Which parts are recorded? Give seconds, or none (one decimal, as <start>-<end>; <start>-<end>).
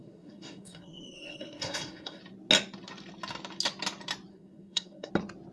2.2-4.3; 5.1-5.5